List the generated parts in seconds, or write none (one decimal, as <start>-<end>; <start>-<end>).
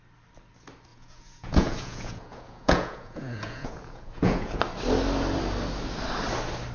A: 0.9-4.6